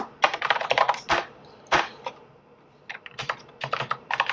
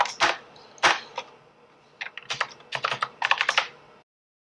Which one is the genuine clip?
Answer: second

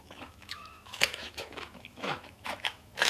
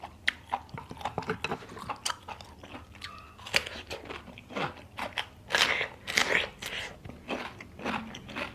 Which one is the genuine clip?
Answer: second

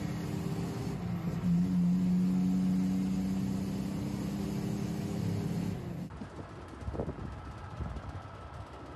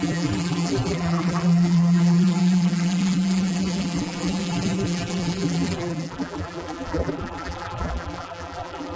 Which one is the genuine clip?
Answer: first